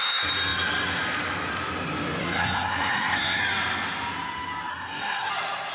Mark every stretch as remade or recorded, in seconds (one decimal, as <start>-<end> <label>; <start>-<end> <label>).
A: 0.0-2.2 recorded; 2.2-3.4 remade; 3.4-4.7 recorded; 4.7-5.3 remade; 5.3-5.7 recorded